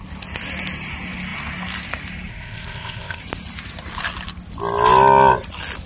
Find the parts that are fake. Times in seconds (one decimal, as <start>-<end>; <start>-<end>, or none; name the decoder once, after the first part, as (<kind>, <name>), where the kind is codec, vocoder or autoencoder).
2.3-3.2 (codec, ZipCodec)